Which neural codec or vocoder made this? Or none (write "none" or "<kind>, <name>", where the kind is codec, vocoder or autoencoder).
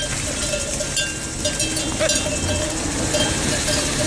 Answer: none